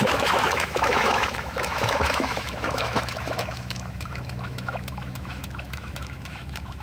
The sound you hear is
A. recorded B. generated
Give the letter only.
B